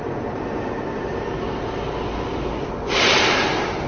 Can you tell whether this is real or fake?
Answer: real